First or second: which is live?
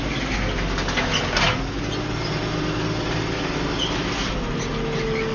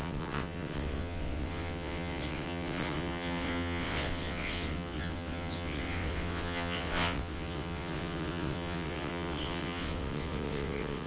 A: first